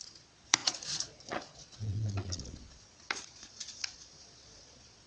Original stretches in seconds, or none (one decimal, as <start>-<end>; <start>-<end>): none